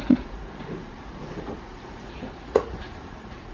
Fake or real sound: fake